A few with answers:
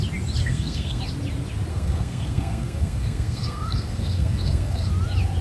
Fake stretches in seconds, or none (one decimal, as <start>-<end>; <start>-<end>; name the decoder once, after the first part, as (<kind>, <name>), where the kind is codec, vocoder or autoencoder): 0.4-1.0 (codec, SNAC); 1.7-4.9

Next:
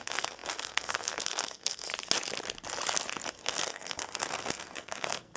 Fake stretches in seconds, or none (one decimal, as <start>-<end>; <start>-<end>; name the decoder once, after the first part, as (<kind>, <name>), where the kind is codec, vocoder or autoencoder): 0.0-1.9 (codec, SNAC); 3.3-5.4

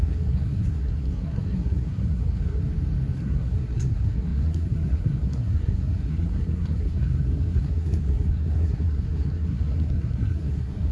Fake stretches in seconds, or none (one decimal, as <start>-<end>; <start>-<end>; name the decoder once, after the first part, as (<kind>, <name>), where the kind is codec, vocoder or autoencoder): 0.0-2.6 (codec, SNAC); 3.2-10.9